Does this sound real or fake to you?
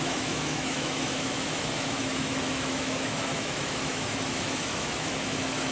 fake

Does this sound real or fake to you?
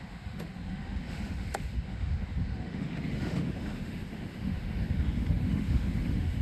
fake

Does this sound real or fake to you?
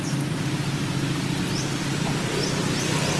real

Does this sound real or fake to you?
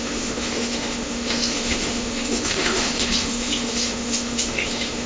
fake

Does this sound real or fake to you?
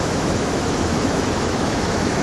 fake